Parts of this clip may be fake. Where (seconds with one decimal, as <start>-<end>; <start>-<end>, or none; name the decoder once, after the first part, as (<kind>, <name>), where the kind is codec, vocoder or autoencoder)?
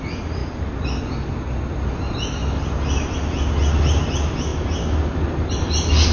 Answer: none